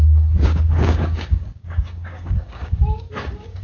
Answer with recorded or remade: remade